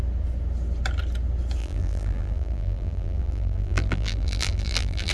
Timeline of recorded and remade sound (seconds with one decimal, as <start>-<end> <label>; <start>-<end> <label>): 0.0-1.6 recorded; 1.6-5.1 remade